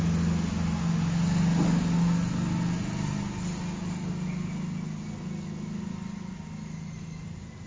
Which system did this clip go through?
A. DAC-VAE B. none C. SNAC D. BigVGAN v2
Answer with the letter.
B